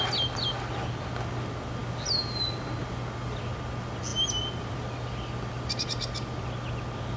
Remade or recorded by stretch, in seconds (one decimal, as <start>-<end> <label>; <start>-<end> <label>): 0.0-7.2 recorded